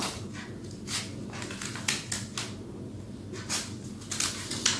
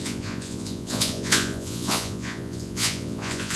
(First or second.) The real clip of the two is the first